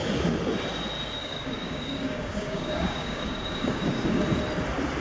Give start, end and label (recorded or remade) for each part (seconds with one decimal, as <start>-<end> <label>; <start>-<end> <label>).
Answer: 0.0-1.2 recorded; 1.2-4.2 remade; 4.2-5.0 recorded